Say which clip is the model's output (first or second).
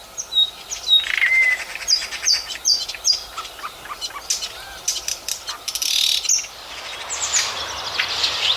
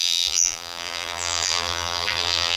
second